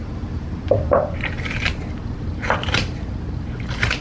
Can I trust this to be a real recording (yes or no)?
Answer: no